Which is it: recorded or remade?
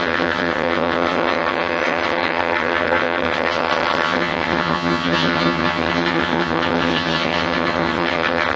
remade